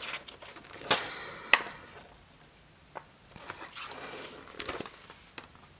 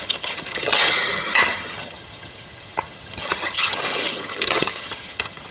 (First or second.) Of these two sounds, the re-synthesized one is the second